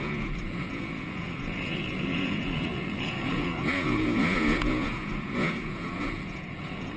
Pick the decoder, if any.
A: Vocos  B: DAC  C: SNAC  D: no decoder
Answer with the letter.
A